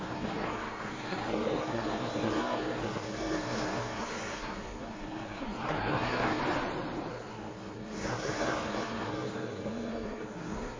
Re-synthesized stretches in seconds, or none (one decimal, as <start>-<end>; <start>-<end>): 0.0-6.4; 7.1-10.8